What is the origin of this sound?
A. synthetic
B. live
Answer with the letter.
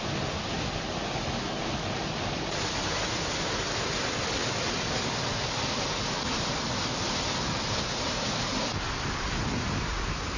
B